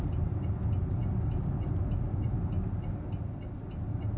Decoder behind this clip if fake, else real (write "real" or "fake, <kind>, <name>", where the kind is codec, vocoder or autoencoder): real